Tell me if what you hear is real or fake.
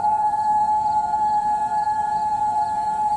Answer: fake